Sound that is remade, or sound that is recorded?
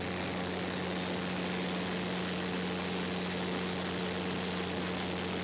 recorded